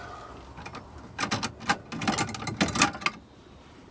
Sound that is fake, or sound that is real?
real